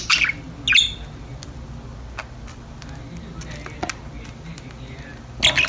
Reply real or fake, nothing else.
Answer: real